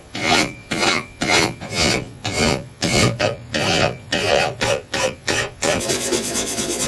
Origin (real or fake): fake